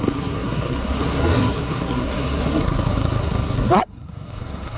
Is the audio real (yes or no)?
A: no